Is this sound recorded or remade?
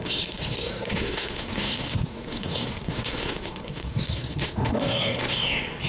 remade